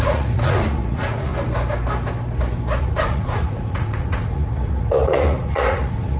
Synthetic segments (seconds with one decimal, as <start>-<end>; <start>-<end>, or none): 0.0-1.3; 2.8-6.2